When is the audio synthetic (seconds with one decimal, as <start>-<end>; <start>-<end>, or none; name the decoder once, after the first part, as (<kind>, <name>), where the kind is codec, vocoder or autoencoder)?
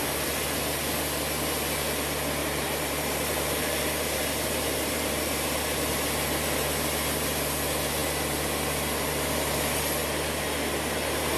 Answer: 2.4-5.9 (vocoder, BigVGAN v2)